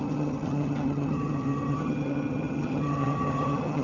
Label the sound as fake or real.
fake